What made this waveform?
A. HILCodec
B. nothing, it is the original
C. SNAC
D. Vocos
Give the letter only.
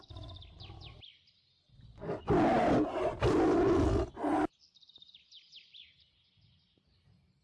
B